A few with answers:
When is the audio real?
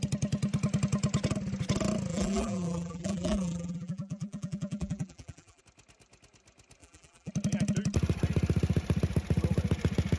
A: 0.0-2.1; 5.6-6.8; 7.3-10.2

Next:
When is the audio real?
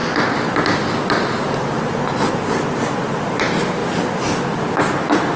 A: 0.0-3.2; 3.8-5.4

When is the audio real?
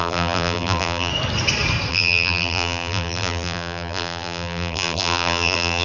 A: 1.1-1.9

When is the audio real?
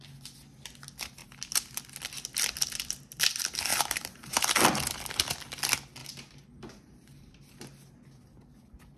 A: 0.0-3.7; 4.3-6.0; 7.5-9.0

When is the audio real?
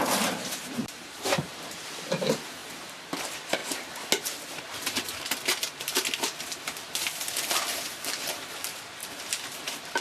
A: 3.6-4.5; 5.9-7.7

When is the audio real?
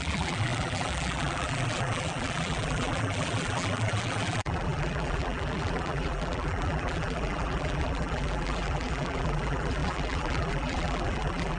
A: none